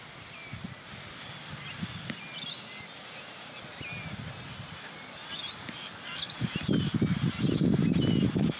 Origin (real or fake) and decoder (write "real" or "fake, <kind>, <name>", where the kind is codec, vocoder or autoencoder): real